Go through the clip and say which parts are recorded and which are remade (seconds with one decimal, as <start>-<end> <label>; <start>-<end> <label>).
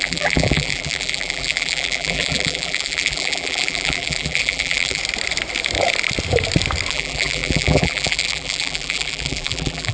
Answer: 0.0-5.0 remade; 5.0-6.9 recorded; 6.9-9.9 remade